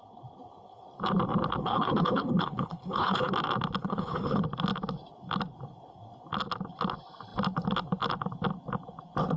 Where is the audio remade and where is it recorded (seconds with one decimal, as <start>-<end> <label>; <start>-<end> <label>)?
0.0-1.6 recorded; 1.6-3.3 remade; 3.3-3.8 recorded; 3.8-4.4 remade; 4.4-9.4 recorded